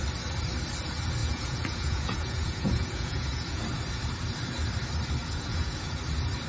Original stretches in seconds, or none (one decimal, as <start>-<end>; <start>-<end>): 0.0-1.2; 3.6-5.2; 6.0-6.5